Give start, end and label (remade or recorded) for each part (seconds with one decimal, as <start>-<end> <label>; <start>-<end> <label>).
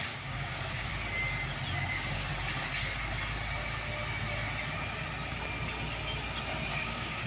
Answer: 0.0-0.9 remade; 0.9-1.9 recorded; 1.9-2.3 remade; 2.3-6.7 recorded; 6.7-7.3 remade